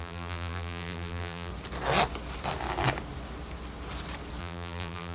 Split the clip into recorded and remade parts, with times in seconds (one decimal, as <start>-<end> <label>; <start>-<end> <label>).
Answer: 0.0-1.5 remade; 1.5-4.4 recorded; 4.4-5.1 remade